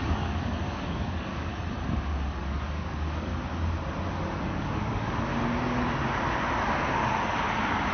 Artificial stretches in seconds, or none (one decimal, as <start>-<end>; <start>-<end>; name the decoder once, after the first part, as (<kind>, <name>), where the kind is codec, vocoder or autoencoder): 0.0-1.5 (codec, DAC); 2.4-3.3; 4.4-5.3